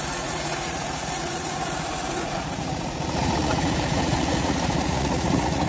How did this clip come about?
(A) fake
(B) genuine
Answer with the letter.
A